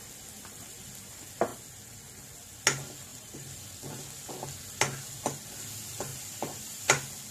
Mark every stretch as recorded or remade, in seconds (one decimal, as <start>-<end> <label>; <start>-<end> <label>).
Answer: 0.0-3.1 recorded; 3.1-4.3 remade; 4.3-6.1 recorded; 6.1-6.8 remade; 6.8-7.3 recorded